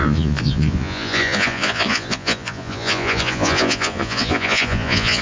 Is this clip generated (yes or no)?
yes